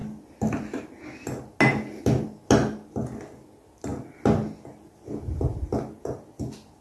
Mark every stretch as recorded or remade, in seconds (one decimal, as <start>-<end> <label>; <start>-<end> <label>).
0.0-6.8 recorded